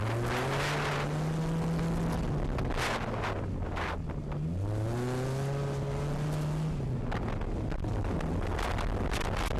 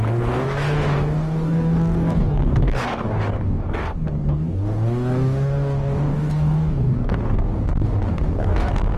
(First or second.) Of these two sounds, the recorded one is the first